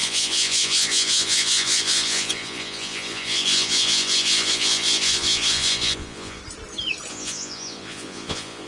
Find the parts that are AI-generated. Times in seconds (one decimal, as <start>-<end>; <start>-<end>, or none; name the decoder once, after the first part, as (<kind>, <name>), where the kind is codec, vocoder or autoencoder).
0.0-6.4 (vocoder, Vocos); 7.1-8.7